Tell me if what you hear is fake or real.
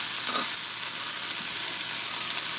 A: real